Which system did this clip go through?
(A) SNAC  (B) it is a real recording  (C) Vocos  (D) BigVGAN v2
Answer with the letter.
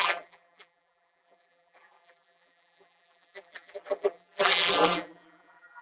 D